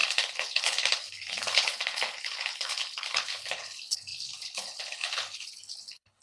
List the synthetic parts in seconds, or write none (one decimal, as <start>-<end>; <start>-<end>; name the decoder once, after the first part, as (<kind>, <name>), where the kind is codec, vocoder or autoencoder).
0.0-6.2 (codec, HILCodec)